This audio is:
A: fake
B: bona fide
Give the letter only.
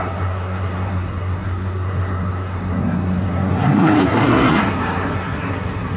A